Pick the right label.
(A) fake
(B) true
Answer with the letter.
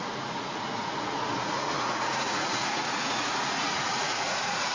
A